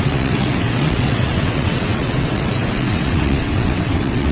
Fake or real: fake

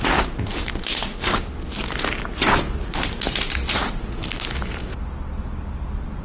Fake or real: real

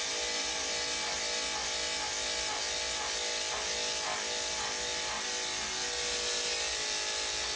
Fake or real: real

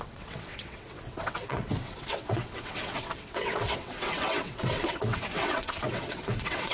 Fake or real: fake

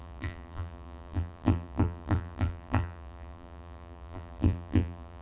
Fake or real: fake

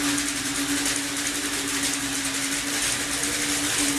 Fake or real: real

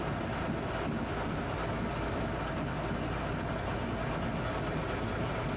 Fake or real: real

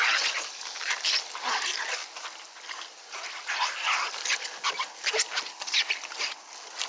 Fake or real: real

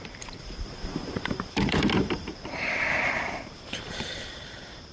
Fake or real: fake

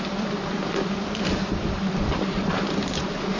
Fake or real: fake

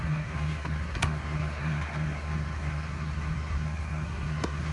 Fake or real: fake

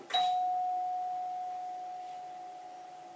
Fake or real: real